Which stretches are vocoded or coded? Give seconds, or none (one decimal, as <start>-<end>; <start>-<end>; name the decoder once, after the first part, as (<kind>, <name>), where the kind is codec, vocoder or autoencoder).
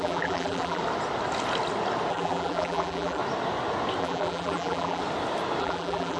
0.0-0.8 (vocoder, BigVGAN v2); 2.1-3.2; 4.0-5.0; 5.6-6.2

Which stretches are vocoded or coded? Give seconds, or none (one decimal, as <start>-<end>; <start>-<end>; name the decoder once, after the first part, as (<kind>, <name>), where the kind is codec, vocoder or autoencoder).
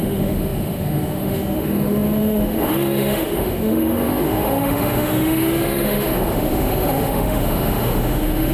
0.0-8.5 (autoencoder, DAC-VAE)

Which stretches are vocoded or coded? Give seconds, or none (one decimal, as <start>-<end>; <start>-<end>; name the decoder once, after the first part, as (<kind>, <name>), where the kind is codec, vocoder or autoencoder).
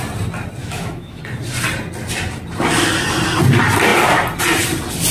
0.6-1.2 (autoencoder, DAC-VAE)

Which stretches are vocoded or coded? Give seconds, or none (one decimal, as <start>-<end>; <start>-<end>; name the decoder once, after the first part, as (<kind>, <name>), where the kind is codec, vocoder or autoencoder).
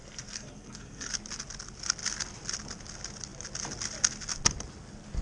0.0-1.1 (codec, SNAC)